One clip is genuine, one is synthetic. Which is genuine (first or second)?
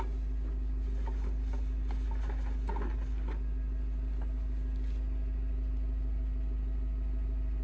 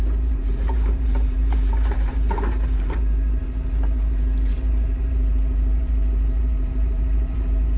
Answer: first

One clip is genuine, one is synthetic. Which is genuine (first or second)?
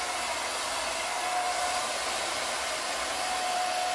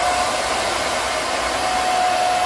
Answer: second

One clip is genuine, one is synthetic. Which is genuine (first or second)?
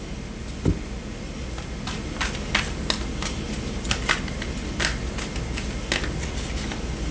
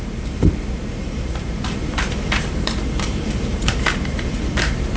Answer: first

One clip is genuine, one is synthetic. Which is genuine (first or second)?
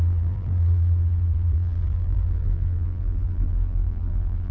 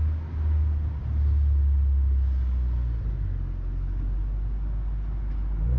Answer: second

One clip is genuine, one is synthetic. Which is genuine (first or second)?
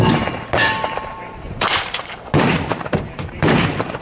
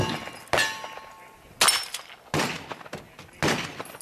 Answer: second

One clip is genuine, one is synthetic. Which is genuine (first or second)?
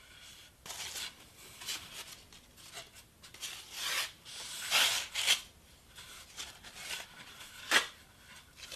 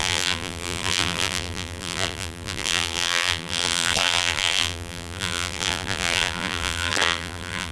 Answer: first